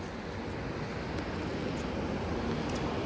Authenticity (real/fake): real